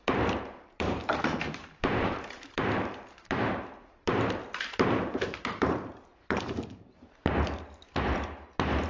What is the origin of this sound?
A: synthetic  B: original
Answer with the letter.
A